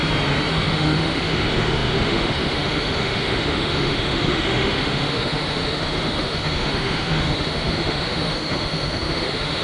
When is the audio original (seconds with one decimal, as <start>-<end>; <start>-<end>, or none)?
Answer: 0.0-0.5